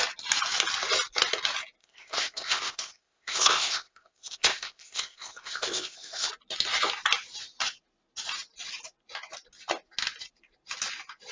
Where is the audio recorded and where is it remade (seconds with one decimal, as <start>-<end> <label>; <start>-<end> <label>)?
0.0-1.8 recorded; 1.8-6.3 remade; 6.3-11.3 recorded